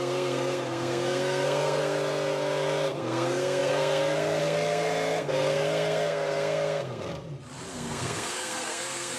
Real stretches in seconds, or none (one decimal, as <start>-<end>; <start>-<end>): 7.1-7.7